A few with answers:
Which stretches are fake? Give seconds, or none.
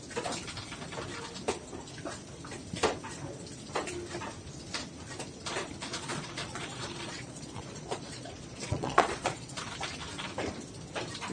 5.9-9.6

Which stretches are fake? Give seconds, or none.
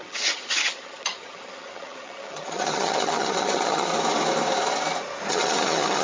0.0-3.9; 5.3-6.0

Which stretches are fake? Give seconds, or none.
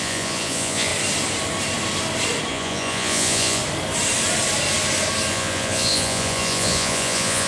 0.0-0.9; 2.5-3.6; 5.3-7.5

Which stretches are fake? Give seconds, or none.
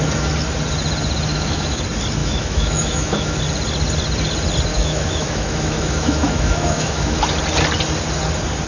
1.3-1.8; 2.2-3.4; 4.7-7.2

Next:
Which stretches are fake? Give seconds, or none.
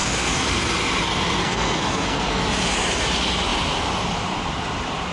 0.0-0.6; 1.4-2.4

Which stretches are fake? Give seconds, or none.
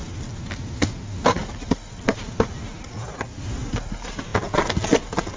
none